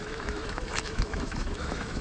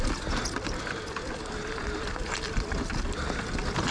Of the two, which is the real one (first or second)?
second